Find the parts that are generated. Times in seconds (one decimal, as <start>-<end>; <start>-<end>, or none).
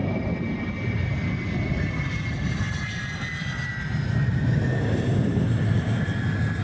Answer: none